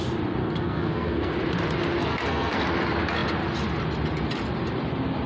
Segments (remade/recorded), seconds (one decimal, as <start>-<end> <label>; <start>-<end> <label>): 0.0-0.4 recorded; 0.4-1.3 remade; 1.3-2.0 recorded; 2.0-2.6 remade; 2.6-5.3 recorded